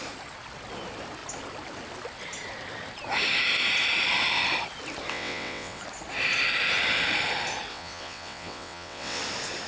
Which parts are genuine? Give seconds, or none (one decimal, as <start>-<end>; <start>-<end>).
0.0-5.1; 5.8-7.7; 9.2-9.7